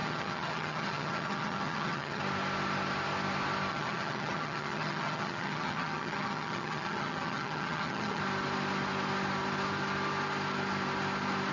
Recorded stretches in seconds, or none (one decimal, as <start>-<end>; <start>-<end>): 2.2-3.7; 8.2-11.5

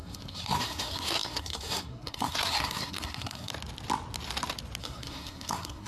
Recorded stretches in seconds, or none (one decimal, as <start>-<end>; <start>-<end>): 3.5-4.8

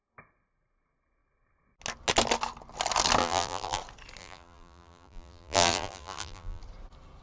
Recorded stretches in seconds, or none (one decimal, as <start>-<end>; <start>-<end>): 0.0-3.2; 3.8-4.2; 6.6-7.2

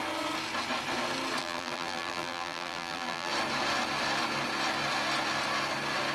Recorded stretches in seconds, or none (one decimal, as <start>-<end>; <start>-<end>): 0.0-1.4; 3.3-6.1

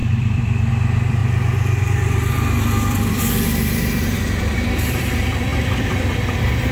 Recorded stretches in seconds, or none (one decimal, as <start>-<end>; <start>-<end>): 1.2-1.8

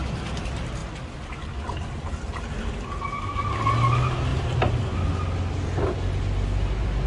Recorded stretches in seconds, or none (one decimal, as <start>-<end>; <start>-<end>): 0.0-4.3; 5.0-7.1

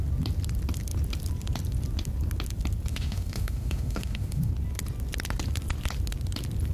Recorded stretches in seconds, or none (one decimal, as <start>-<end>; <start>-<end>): 0.0-2.9; 4.5-6.7